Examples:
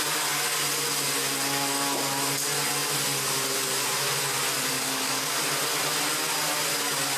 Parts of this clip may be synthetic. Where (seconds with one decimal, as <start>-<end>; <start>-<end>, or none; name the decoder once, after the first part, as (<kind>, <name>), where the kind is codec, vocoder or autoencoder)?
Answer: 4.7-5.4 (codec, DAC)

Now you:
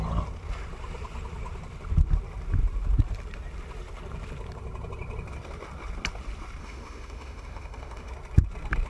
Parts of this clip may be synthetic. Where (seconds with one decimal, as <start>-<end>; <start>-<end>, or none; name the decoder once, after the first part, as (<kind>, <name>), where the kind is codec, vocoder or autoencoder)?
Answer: 6.6-8.1 (autoencoder, DAC-VAE)

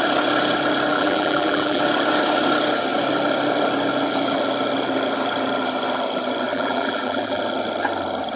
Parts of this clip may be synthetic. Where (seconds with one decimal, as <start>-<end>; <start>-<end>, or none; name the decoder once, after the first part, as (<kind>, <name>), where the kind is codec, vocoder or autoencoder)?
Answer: 0.9-1.8 (vocoder, BigVGAN v2); 6.5-7.4

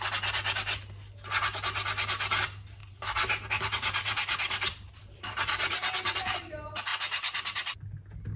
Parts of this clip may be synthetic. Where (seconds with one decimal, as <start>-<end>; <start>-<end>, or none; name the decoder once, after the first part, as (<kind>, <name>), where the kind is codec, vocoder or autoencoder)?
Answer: 2.8-6.5 (vocoder, BigVGAN v2)

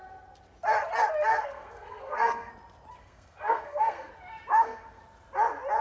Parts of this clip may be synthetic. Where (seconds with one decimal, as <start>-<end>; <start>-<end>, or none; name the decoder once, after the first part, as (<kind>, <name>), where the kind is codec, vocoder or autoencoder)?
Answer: 1.3-2.5 (codec, SNAC); 3.0-4.1; 4.5-5.0

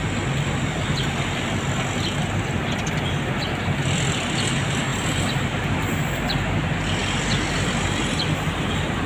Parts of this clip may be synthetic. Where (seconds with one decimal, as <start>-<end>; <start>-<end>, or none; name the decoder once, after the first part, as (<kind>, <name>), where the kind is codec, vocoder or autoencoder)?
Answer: none

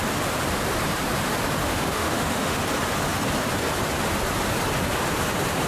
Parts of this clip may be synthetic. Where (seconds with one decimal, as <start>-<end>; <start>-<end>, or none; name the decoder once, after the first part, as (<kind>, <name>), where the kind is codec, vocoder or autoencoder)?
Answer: 1.6-2.6 (autoencoder, DAC-VAE)